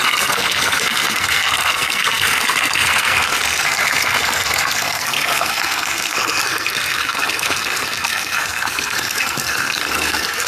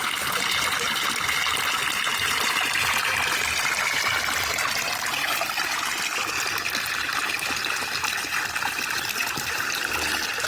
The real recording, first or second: second